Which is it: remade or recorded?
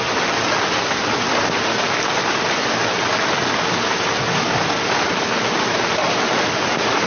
recorded